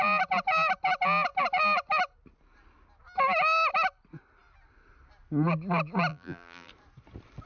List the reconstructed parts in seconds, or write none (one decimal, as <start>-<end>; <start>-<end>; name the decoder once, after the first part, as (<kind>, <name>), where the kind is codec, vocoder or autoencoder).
6.1-6.7 (vocoder, BigVGAN v2)